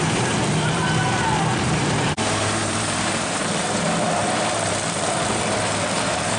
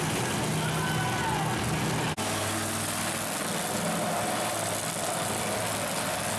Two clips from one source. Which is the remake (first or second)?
first